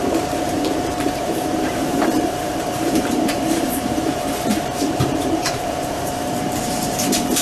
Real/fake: fake